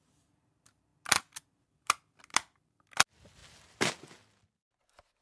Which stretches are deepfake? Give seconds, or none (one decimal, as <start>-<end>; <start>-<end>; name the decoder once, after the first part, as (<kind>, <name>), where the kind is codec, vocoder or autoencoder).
none